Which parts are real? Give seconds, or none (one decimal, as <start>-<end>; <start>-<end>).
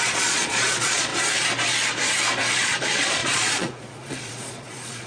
1.1-2.5